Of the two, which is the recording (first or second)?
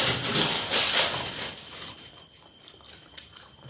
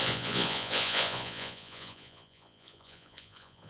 first